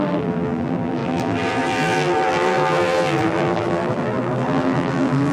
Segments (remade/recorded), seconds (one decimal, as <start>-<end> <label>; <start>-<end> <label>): 0.0-5.3 remade